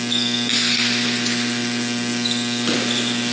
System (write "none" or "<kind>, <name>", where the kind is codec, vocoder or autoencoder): none